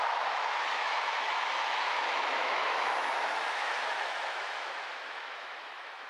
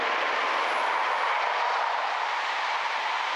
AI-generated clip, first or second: first